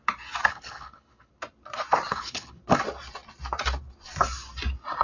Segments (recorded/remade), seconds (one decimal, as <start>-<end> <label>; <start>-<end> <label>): 0.0-0.5 recorded; 0.5-1.3 remade; 1.3-2.1 recorded; 2.1-2.6 remade; 2.6-5.0 recorded